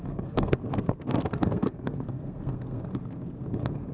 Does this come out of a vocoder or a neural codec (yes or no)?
yes